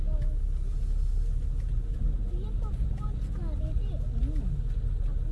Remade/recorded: recorded